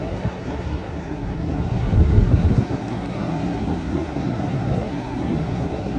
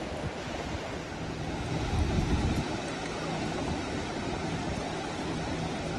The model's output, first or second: first